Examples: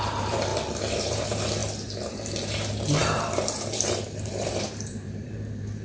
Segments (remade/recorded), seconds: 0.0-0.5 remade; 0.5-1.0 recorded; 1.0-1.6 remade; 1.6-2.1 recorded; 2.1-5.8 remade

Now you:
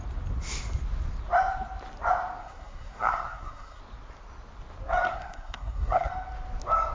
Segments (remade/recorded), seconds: 0.0-2.4 recorded; 2.4-3.8 remade; 3.8-5.1 recorded; 5.1-6.1 remade; 6.1-6.9 recorded

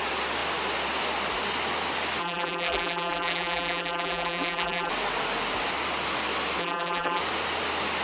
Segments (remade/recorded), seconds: 0.0-2.2 recorded; 2.2-4.9 remade; 4.9-6.6 recorded; 6.6-7.2 remade; 7.2-8.0 recorded

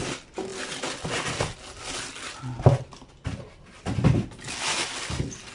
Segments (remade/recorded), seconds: 0.0-5.5 recorded